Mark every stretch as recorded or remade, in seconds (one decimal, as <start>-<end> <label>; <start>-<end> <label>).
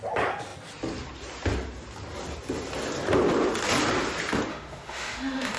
0.0-4.5 recorded; 4.5-5.6 remade